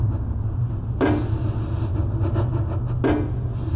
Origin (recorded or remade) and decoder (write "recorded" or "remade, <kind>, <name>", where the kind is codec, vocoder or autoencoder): recorded